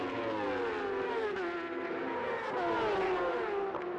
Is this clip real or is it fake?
real